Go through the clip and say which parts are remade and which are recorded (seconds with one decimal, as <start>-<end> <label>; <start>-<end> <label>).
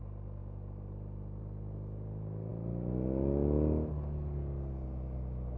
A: 0.0-5.6 recorded